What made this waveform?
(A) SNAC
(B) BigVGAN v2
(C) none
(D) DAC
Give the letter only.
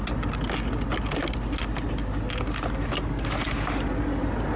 C